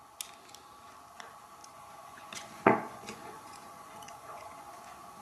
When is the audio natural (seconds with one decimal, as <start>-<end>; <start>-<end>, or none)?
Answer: 0.0-1.6; 4.7-5.2